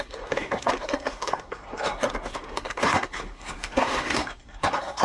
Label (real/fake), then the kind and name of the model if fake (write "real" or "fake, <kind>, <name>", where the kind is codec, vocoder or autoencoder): fake, codec, SNAC